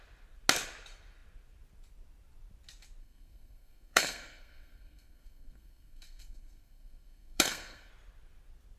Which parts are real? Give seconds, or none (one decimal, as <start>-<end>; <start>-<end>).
0.0-3.0; 7.9-8.8